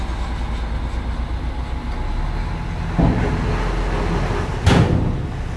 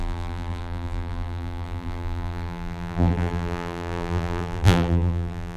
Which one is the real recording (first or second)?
first